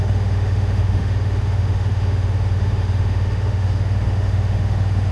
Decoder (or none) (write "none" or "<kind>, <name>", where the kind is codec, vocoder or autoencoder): autoencoder, DAC-VAE